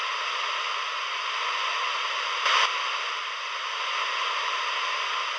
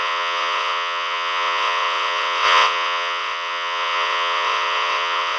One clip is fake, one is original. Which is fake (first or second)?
second